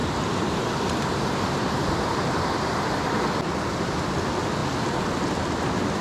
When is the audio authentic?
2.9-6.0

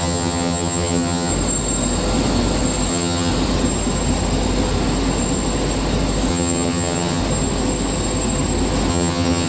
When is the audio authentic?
1.3-2.9; 3.3-6.3; 7.2-8.9

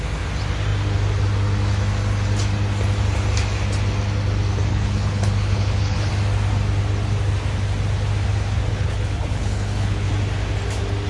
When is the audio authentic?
0.0-4.7; 6.1-8.7; 10.1-11.1

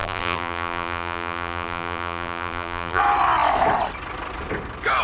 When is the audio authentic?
3.0-5.0

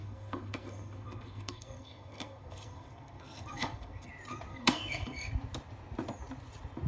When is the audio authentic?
4.1-4.5; 5.3-6.9

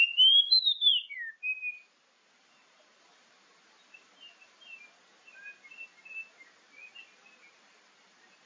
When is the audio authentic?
0.0-8.5

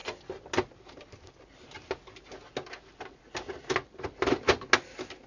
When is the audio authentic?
0.0-5.3